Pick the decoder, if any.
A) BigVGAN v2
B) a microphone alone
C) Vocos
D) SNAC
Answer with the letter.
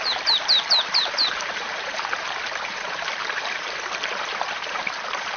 A